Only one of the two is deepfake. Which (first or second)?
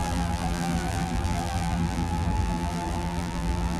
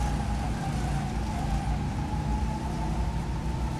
first